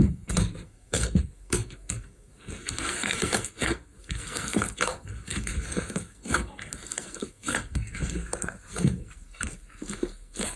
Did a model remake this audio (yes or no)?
yes